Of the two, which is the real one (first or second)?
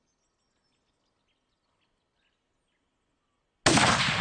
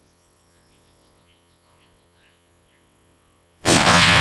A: first